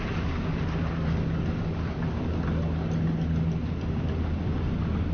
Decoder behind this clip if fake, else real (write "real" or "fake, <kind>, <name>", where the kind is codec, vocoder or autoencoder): real